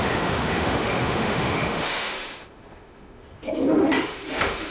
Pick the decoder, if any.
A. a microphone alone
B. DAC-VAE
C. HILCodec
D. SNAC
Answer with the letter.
B